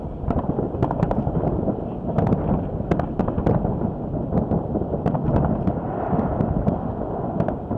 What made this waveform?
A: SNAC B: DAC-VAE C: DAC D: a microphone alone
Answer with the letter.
D